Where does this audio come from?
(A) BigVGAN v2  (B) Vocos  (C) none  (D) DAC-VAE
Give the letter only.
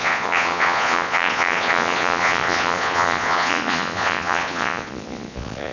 B